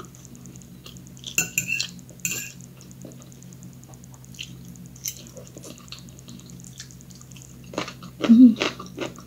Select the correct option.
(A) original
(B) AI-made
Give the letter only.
A